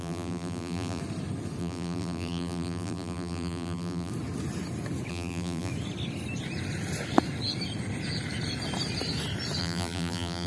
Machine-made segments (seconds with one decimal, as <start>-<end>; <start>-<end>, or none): 0.0-1.0; 1.6-4.1; 5.1-5.7; 9.6-10.5